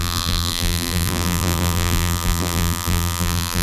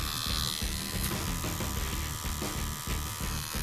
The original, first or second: second